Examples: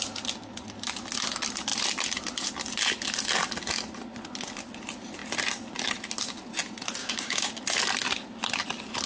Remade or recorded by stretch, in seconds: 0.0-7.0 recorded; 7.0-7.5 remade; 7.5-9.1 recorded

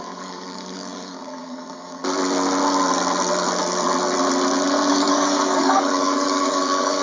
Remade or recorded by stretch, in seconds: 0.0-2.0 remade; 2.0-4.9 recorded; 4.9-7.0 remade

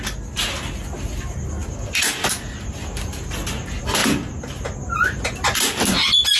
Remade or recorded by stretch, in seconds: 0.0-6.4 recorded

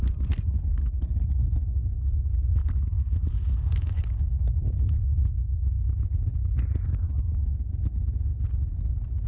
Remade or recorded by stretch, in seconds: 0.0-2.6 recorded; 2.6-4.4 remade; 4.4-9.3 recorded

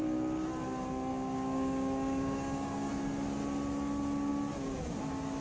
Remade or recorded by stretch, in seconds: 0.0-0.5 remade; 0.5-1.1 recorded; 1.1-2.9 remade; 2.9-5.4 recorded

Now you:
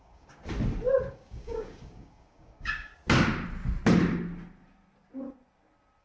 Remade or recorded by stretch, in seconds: 0.0-0.4 remade; 0.4-1.1 recorded; 1.1-2.9 remade; 2.9-6.0 recorded

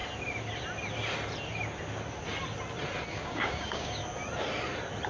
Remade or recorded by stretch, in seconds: 0.0-3.1 recorded; 3.1-4.0 remade; 4.0-5.1 recorded

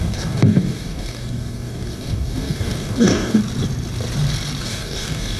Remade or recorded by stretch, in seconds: 0.0-3.4 remade; 3.4-4.6 recorded; 4.6-5.4 remade